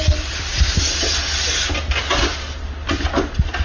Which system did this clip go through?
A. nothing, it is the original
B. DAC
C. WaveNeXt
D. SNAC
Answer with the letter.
A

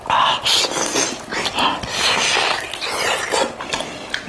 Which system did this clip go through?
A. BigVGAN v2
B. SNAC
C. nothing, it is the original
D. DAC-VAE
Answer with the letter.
C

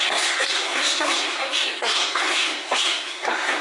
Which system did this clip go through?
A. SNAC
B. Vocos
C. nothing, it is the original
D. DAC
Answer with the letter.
A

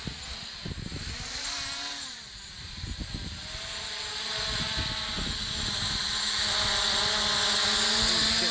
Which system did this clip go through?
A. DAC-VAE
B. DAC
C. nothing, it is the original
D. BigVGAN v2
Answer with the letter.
C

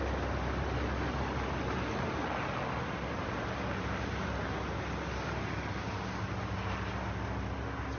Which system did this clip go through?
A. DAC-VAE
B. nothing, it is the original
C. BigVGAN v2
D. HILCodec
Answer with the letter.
B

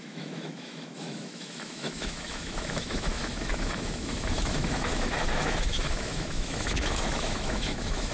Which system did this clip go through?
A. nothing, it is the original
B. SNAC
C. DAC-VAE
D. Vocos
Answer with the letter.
C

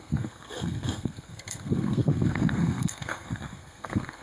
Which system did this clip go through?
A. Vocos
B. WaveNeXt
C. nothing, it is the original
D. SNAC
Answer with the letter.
D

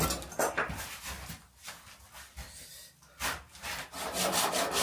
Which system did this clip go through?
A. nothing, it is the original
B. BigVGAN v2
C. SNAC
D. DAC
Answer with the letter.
A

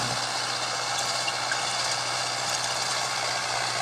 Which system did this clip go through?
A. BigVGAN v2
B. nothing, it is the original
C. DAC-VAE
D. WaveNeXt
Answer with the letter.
B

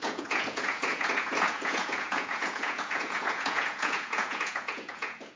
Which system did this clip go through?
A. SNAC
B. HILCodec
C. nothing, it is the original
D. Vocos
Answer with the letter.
D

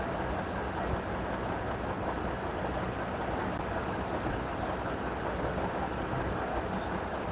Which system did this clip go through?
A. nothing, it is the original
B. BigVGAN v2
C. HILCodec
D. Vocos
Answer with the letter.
A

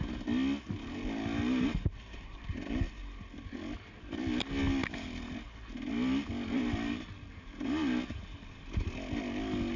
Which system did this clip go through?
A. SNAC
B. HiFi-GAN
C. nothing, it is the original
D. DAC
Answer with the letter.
C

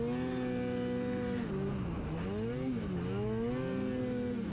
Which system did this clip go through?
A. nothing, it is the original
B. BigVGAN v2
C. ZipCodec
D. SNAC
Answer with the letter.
A